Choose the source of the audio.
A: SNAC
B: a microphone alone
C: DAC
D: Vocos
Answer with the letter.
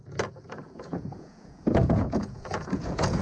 D